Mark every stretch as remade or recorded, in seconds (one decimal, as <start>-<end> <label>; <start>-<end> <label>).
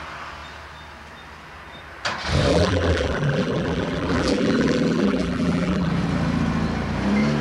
0.0-2.5 recorded; 2.5-5.9 remade; 5.9-7.4 recorded